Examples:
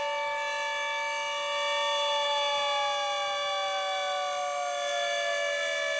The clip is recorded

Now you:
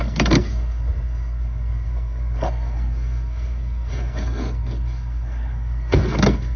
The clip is remade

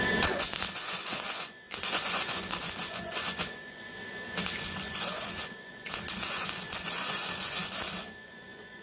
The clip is remade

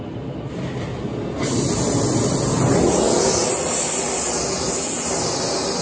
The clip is recorded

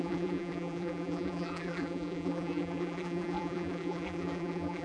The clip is remade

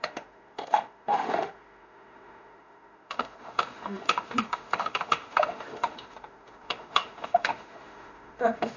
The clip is remade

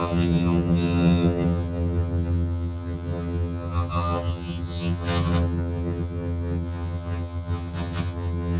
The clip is remade